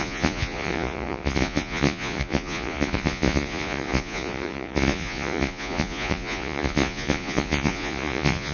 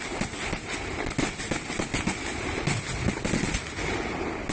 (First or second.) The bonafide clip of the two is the second